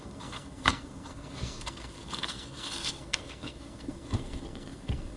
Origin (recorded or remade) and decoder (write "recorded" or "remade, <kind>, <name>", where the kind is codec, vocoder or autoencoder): remade, codec, SNAC